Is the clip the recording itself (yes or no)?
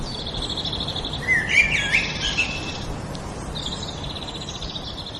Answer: yes